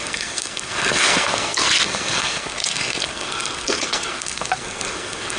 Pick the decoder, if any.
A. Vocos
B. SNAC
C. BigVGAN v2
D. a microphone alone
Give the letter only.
B